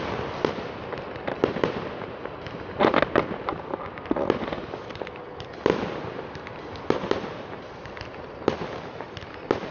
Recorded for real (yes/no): yes